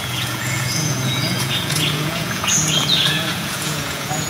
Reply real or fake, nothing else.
fake